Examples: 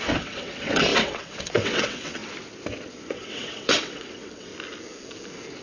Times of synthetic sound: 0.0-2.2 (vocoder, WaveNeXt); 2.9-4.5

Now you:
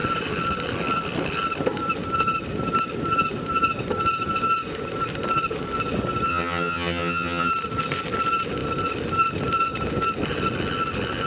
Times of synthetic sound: 6.3-7.5 (vocoder, HiFi-GAN)

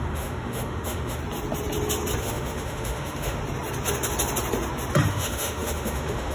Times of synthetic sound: 0.0-1.2 (autoencoder, DAC-VAE); 2.2-3.4; 5.1-6.3

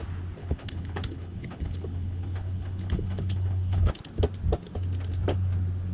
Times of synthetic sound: 0.4-3.9 (codec, HILCodec)